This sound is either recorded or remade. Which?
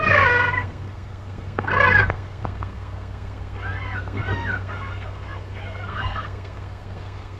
remade